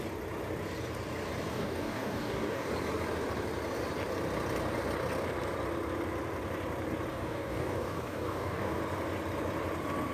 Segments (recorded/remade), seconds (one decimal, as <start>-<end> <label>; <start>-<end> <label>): 0.0-1.5 recorded; 1.5-2.7 remade; 2.7-7.1 recorded; 7.1-8.8 remade; 8.8-10.1 recorded